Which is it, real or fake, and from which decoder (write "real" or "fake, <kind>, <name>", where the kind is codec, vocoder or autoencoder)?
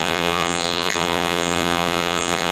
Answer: fake, vocoder, BigVGAN v2